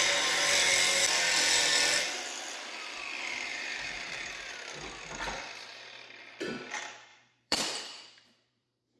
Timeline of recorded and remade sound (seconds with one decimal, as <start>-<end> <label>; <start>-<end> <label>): 0.0-3.5 recorded; 3.5-4.5 remade; 4.5-7.1 recorded; 7.1-9.0 remade